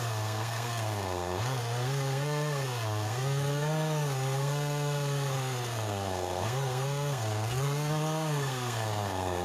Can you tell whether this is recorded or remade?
remade